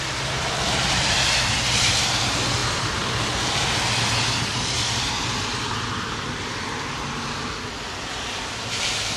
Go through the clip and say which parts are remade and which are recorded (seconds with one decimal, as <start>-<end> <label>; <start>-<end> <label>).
0.0-2.6 recorded; 2.6-3.1 remade; 3.1-4.5 recorded; 4.5-7.6 remade; 7.6-9.2 recorded